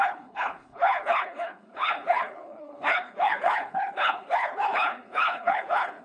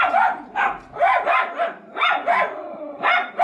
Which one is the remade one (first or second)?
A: first